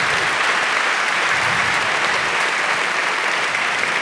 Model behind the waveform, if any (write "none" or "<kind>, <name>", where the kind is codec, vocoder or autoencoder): none